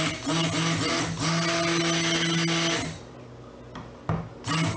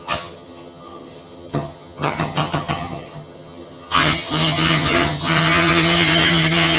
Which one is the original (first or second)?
first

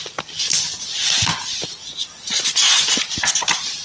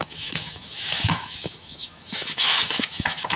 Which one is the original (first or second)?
first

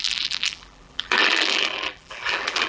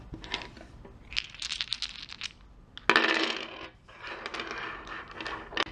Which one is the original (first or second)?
second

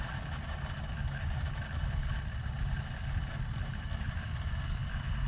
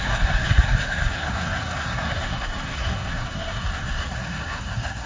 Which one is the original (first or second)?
first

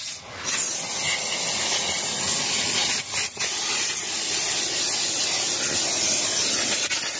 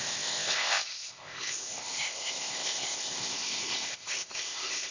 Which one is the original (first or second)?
first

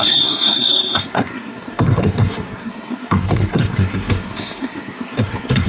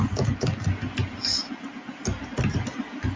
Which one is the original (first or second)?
second